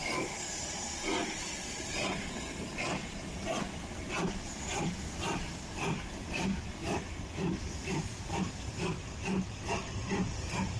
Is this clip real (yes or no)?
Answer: yes